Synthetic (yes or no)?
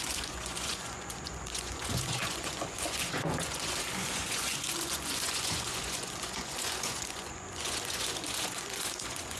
yes